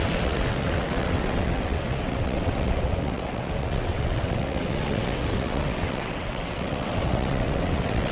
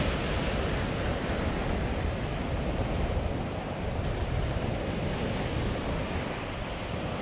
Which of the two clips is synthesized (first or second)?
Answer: first